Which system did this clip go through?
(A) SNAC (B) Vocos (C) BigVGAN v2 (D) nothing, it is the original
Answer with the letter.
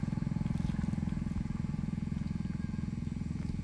D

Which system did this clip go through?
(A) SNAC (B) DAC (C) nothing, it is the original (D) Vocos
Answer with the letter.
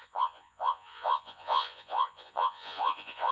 D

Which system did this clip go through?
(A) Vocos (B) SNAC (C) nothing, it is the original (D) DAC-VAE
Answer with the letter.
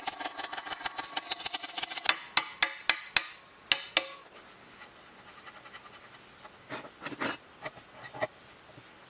C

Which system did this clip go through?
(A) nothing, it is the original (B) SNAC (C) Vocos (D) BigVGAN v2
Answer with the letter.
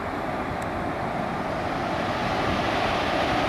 A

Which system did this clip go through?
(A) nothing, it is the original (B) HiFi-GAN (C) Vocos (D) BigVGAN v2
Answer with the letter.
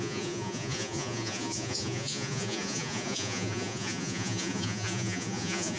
C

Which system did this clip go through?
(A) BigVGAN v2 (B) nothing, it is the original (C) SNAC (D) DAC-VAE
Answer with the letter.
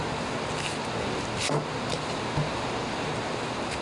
B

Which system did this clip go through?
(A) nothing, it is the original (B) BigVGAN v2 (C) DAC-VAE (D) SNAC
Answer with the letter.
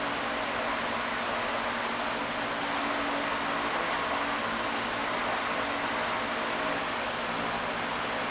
A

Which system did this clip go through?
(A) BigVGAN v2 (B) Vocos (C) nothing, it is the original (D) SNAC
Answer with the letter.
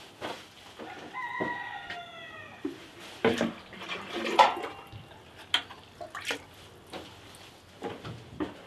C